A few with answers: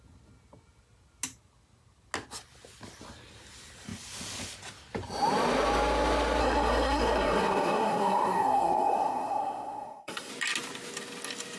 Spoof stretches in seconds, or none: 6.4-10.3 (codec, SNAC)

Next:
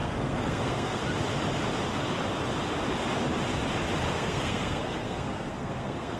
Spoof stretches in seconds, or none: 0.0-1.0 (codec, SNAC); 4.1-6.2

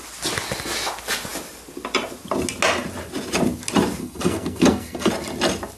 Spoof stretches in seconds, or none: 4.0-5.1 (codec, SNAC)

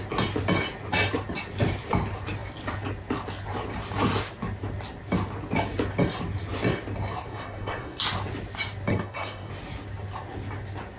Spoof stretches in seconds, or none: 7.3-8.0 (codec, SNAC); 8.9-9.5

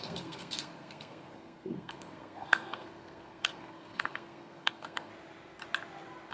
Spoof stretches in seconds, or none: 0.0-5.1 (codec, SNAC)

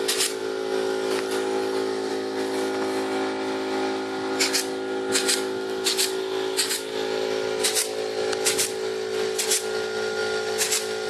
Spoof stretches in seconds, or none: none